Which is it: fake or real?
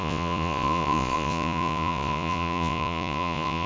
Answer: fake